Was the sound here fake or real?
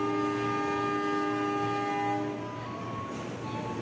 real